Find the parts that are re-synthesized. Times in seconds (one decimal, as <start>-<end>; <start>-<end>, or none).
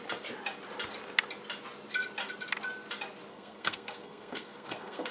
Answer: 3.3-5.1